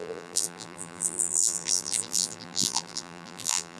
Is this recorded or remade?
remade